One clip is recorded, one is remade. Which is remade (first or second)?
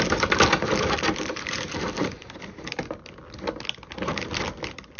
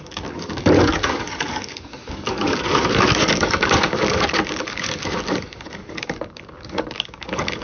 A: second